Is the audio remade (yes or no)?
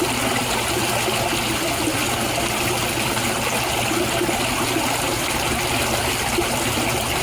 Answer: no